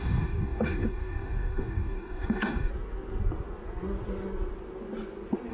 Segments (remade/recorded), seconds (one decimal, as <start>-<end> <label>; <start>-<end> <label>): 0.0-2.7 remade; 2.7-5.5 recorded

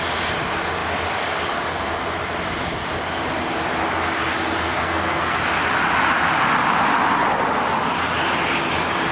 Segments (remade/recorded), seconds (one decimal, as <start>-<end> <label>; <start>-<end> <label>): 0.0-4.8 recorded; 4.8-5.4 remade; 5.4-9.1 recorded